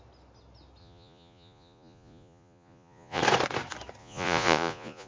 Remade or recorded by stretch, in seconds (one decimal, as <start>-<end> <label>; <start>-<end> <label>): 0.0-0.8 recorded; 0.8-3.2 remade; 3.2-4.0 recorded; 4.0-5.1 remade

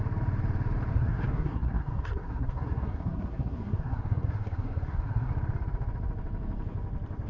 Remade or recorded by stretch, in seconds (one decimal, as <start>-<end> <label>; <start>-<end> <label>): 0.0-0.9 recorded; 0.9-5.3 remade; 5.3-7.3 recorded

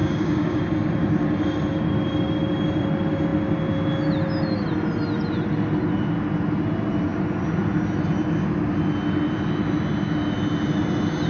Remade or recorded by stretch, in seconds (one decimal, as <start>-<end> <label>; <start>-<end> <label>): 0.0-0.6 remade; 0.6-11.3 recorded

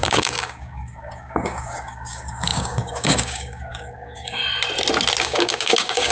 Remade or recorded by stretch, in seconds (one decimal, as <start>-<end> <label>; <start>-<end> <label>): 0.0-4.4 remade; 4.4-5.2 recorded; 5.2-6.1 remade